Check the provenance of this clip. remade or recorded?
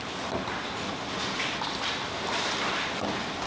recorded